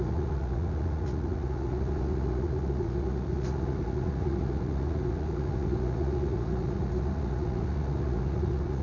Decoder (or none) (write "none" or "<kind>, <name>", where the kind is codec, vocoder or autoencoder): vocoder, Vocos